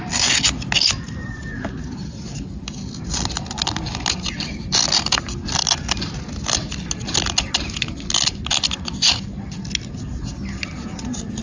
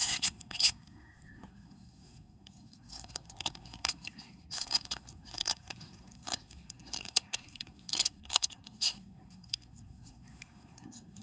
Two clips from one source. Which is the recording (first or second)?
first